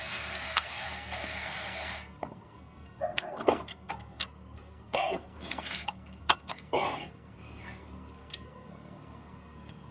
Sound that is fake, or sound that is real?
fake